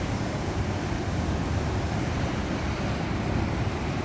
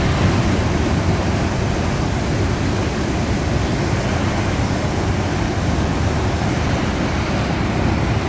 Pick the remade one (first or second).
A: first